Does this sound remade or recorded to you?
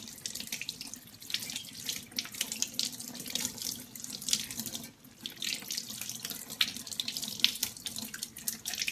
recorded